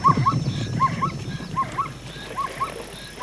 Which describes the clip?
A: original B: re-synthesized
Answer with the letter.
A